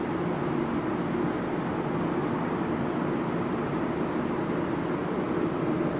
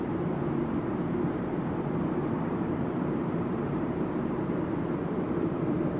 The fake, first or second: second